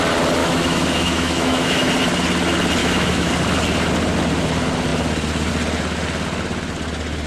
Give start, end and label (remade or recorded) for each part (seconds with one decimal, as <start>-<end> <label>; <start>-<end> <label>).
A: 0.0-0.4 recorded; 0.4-1.9 remade; 1.9-2.8 recorded; 2.8-3.3 remade; 3.3-7.3 recorded